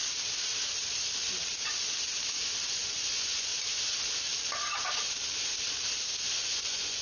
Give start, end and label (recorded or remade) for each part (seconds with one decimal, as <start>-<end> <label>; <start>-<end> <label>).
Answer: 0.0-2.7 recorded; 2.7-3.5 remade; 3.5-6.2 recorded; 6.2-7.0 remade